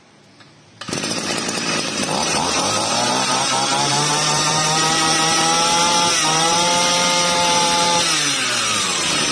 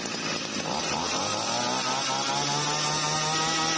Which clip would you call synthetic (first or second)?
first